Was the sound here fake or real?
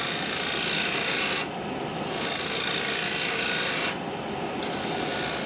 real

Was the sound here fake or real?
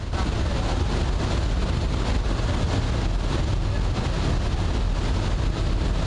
real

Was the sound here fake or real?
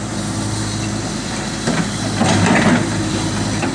real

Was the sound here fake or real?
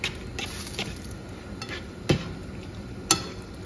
real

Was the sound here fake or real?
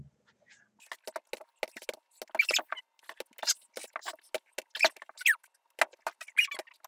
real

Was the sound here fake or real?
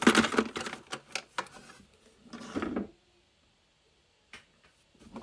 real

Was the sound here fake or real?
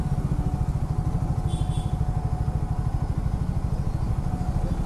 real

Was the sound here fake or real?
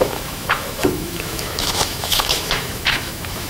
fake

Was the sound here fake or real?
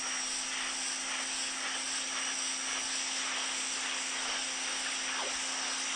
real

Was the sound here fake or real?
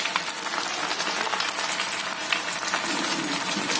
real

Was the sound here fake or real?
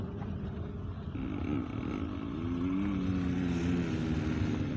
real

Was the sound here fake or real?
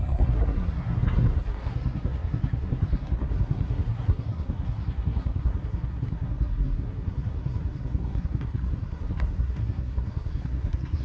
fake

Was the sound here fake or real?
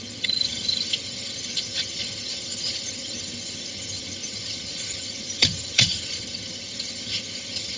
fake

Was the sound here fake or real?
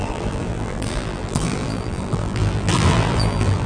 fake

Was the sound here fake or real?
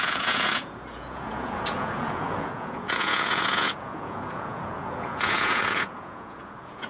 fake